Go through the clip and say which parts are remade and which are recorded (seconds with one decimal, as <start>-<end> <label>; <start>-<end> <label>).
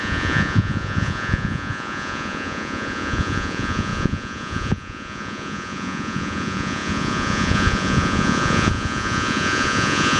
0.0-10.2 remade